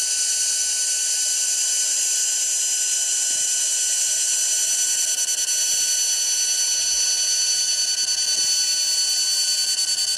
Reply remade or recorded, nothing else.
recorded